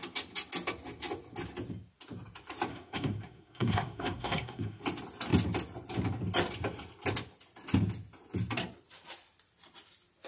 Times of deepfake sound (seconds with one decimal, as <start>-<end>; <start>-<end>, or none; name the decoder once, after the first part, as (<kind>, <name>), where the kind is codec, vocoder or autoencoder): 2.7-4.8 (codec, SNAC)